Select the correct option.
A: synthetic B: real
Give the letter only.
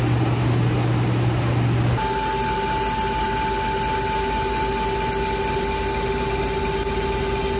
B